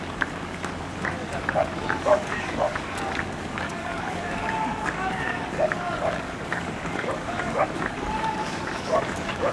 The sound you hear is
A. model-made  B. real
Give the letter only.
A